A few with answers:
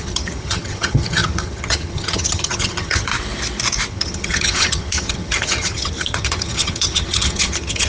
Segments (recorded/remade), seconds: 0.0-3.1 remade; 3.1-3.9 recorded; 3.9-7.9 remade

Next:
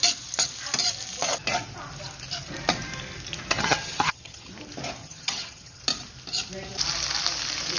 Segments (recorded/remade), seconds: 0.0-3.5 recorded; 3.5-4.5 remade; 4.5-5.0 recorded; 5.0-5.8 remade; 5.8-7.8 recorded

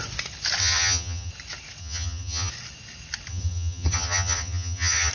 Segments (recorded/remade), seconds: 0.0-0.6 recorded; 0.6-1.3 remade; 1.3-1.8 recorded; 1.8-2.5 remade; 2.5-3.3 recorded; 3.3-5.1 remade

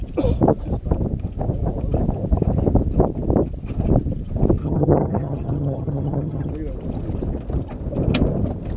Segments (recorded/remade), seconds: 0.0-4.6 recorded; 4.6-6.5 remade; 6.5-8.8 recorded

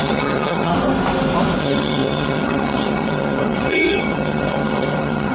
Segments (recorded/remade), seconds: 0.0-0.7 remade; 0.7-1.6 recorded; 1.6-5.3 remade